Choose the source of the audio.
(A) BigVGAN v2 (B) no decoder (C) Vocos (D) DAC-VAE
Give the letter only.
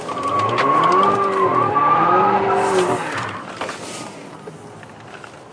B